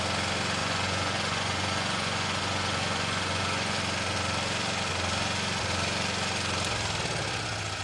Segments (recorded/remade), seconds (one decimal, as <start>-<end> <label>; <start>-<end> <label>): 0.0-0.6 recorded; 0.6-3.8 remade; 3.8-7.8 recorded